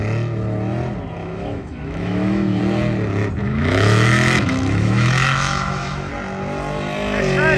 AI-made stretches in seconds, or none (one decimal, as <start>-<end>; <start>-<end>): 1.2-2.6; 3.4-6.1